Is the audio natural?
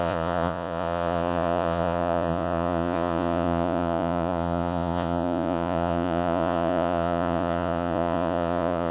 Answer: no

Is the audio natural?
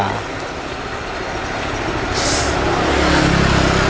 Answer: yes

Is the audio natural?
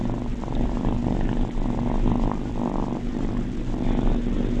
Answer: yes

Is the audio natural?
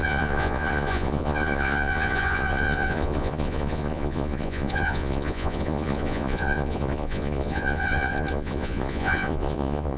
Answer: no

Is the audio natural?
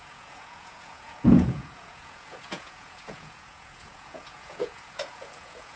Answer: no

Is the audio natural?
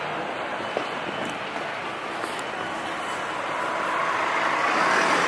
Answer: yes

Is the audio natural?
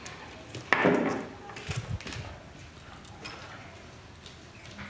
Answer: yes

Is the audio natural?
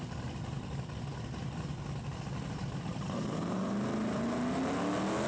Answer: yes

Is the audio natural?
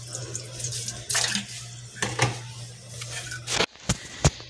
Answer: yes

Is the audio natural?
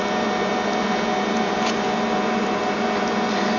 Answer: yes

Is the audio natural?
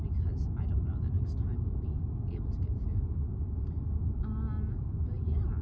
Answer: yes